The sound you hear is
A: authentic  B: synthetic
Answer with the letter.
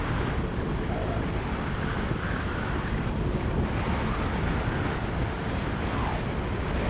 A